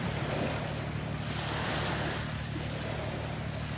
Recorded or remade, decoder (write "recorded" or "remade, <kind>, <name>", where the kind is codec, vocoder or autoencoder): recorded